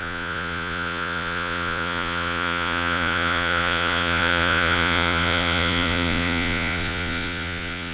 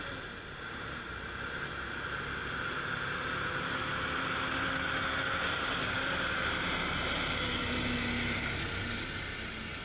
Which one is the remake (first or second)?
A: first